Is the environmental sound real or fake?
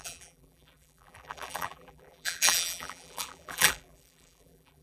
fake